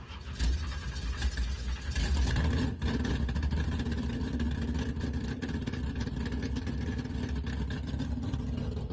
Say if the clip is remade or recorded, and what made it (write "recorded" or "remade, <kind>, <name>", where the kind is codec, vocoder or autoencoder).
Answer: recorded